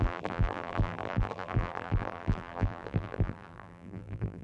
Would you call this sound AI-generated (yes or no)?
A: yes